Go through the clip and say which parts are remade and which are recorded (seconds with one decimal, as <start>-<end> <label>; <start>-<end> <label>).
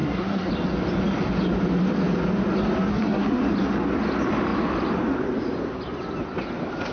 0.0-0.5 remade; 0.5-2.9 recorded; 2.9-3.4 remade; 3.4-6.9 recorded